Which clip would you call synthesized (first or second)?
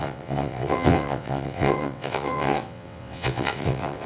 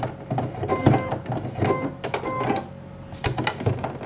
first